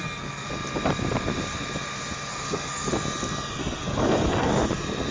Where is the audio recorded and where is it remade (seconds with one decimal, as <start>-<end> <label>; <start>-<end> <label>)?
0.0-0.5 remade; 0.5-2.3 recorded; 2.3-2.9 remade; 2.9-3.6 recorded; 3.6-4.5 remade; 4.5-5.1 recorded